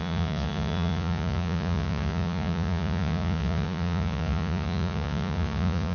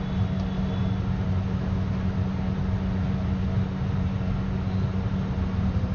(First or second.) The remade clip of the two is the first